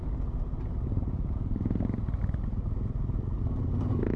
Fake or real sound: real